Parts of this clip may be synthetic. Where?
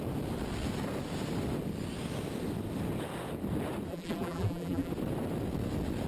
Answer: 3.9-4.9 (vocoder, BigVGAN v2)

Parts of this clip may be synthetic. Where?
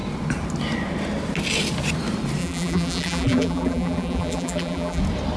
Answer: 2.4-5.0 (vocoder, BigVGAN v2)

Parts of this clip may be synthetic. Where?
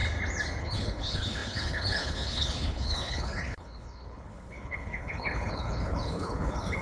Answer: 0.6-6.8 (codec, HILCodec)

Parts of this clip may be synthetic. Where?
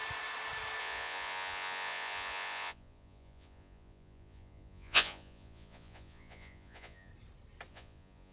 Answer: 0.8-7.1 (vocoder, Vocos); 7.7-8.3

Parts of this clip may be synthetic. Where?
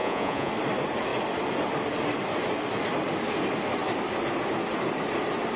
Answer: 0.0-0.5 (vocoder, Vocos)